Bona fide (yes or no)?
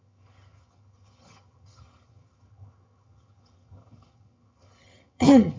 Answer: no